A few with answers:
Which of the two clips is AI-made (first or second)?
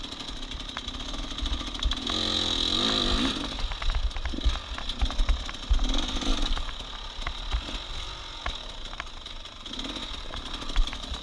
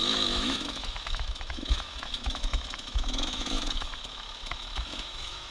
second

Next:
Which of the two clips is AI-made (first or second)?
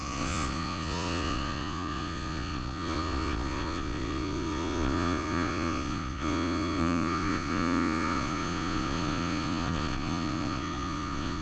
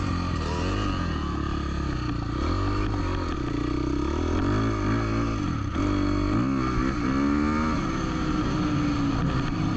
first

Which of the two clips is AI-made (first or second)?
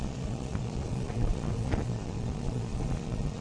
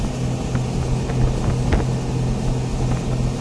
first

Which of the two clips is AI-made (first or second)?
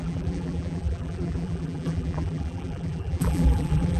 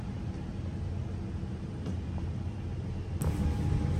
first